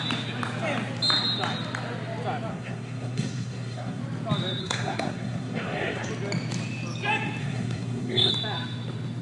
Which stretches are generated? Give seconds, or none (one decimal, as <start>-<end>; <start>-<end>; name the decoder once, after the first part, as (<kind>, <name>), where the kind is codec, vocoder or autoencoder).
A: 2.5-4.0 (codec, SNAC); 4.6-6.1; 7.4-8.3